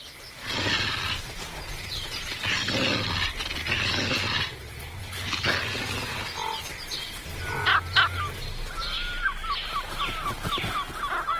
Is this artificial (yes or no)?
no